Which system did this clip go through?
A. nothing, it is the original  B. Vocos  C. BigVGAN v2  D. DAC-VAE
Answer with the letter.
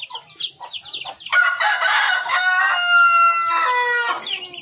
A